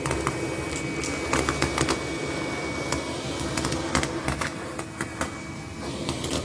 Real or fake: real